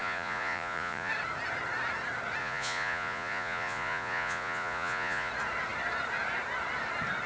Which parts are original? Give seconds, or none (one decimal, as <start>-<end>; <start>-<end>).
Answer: 1.1-2.4; 5.3-7.3